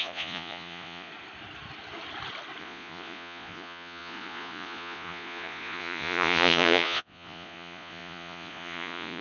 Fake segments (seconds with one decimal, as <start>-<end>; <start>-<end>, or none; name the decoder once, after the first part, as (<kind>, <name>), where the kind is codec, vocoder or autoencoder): 0.0-1.1 (vocoder, Vocos); 2.6-9.2